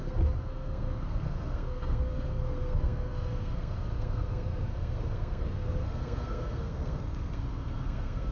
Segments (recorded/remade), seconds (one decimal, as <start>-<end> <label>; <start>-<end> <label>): 0.0-8.3 remade